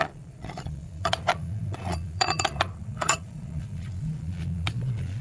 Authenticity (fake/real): fake